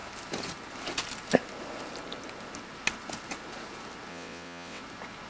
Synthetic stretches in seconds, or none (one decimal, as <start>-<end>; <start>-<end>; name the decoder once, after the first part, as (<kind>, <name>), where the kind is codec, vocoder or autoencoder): 4.1-4.8 (vocoder, WaveNeXt)